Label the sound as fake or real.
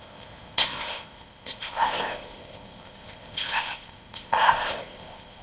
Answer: fake